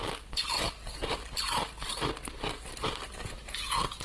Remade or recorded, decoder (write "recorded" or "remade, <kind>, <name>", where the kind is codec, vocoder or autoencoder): recorded